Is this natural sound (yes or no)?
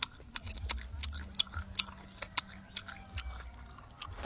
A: yes